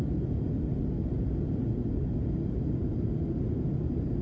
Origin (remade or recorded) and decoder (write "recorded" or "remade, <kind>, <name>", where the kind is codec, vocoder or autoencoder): recorded